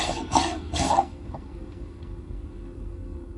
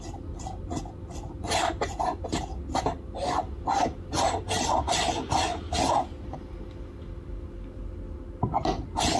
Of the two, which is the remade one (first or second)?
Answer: first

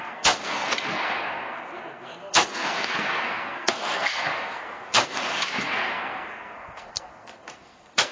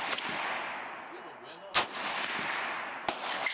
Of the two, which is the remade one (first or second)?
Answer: first